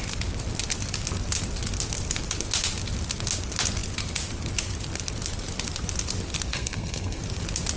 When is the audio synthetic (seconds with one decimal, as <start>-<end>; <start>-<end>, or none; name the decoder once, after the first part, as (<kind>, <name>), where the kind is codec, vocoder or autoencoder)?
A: 6.5-7.2 (codec, SNAC)